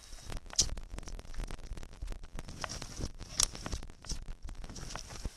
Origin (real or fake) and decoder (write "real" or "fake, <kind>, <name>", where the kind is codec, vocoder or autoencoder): real